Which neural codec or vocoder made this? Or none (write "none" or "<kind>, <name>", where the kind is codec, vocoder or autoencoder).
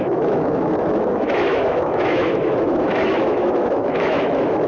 autoencoder, DAC-VAE